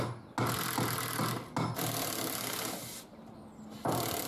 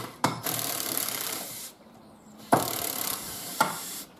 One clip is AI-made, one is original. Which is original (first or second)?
first